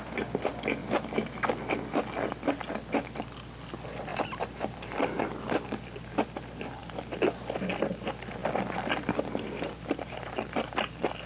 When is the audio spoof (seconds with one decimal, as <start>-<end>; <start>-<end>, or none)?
4.1-5.1; 8.4-11.3